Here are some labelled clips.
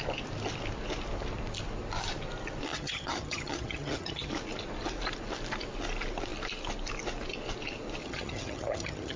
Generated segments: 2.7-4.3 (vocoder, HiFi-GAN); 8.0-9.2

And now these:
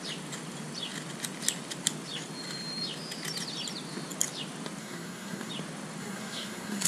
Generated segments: 4.8-5.5 (codec, SNAC); 6.0-6.9

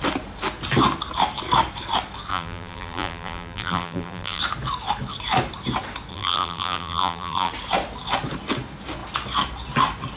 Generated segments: 2.3-4.4 (vocoder, BigVGAN v2); 6.1-7.5